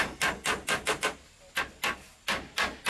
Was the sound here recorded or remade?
recorded